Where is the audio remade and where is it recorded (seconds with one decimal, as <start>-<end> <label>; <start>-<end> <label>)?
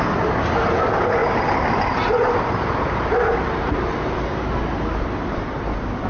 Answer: 0.0-1.2 recorded; 1.2-3.3 remade; 3.3-6.1 recorded